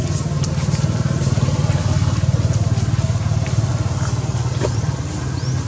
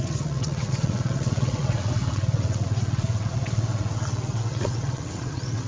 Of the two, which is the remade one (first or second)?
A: second